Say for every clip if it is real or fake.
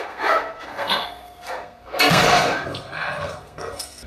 fake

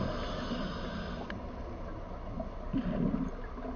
real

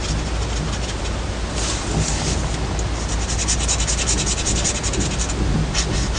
real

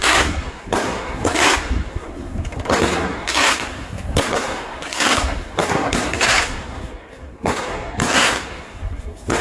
fake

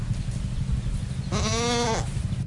real